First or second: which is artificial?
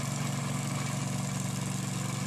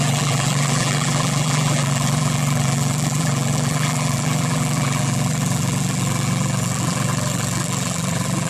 second